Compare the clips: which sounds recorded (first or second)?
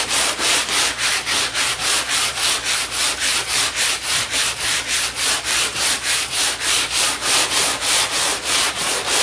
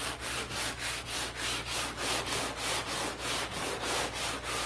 second